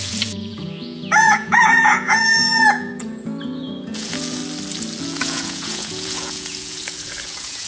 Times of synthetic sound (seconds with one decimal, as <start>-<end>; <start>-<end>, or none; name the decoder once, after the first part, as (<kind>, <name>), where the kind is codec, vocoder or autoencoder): 0.0-4.4 (vocoder, Vocos); 5.0-7.7